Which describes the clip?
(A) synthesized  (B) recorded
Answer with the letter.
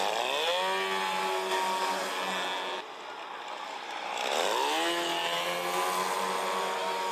B